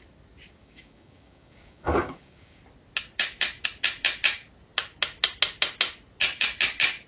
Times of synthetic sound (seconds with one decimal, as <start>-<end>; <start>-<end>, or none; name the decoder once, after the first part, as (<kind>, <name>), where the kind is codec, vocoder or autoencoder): 0.6-2.6 (codec, DAC)